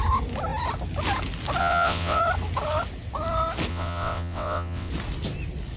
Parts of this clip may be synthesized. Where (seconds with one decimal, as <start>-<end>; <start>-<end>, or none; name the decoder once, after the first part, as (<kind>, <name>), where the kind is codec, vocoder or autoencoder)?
1.6-2.2 (vocoder, WaveNeXt); 3.7-4.9